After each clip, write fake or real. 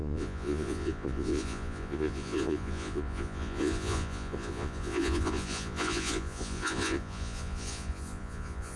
fake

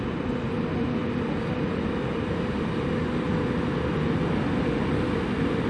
real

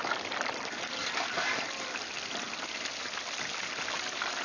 real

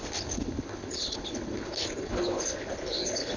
fake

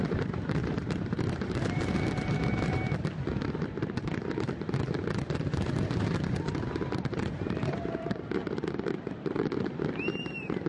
fake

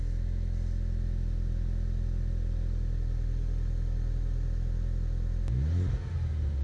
real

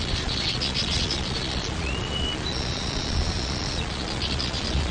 fake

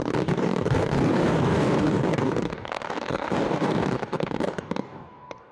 fake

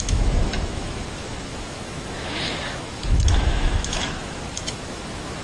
fake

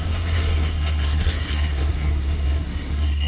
fake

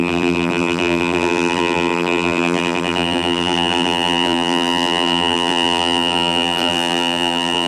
fake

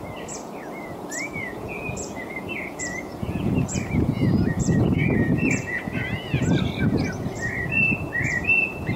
fake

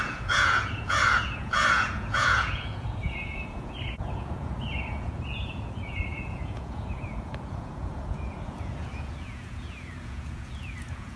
fake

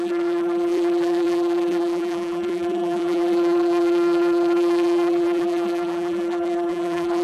fake